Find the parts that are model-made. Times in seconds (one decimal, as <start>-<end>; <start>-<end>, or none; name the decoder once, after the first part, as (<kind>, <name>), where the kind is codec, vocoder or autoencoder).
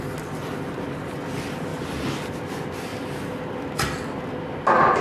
none